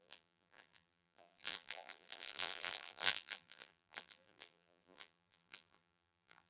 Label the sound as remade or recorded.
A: remade